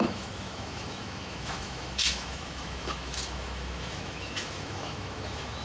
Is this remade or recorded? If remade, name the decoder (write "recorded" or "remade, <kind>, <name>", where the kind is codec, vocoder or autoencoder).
remade, autoencoder, DAC-VAE